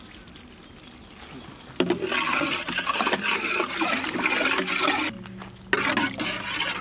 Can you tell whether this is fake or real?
real